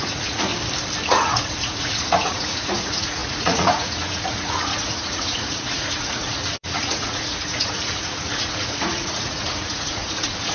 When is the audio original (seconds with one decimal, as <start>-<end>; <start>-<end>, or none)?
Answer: 0.5-1.1